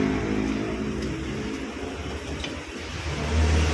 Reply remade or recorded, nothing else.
recorded